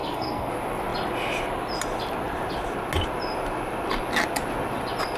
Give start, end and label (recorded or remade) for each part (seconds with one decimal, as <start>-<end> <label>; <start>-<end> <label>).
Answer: 0.0-0.5 remade; 0.5-5.2 recorded